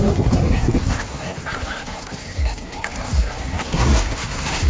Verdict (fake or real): fake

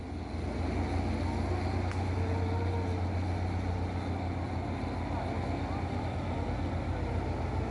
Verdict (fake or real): real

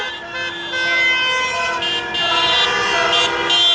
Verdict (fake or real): real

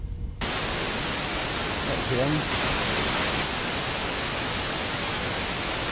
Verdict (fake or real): real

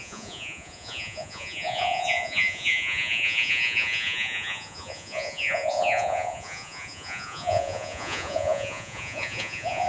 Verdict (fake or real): fake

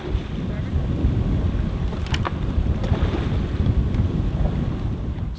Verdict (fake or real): real